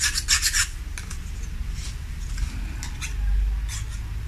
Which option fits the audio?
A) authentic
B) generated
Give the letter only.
A